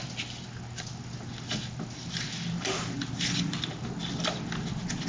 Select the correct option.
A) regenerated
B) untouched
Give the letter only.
B